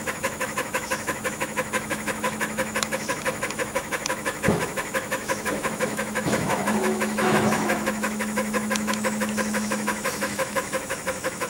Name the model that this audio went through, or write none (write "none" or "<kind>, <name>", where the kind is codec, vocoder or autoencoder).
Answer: autoencoder, DAC-VAE